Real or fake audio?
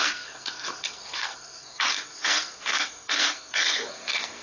fake